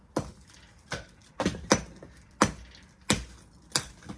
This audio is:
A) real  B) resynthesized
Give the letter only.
A